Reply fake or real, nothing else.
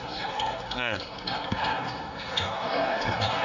fake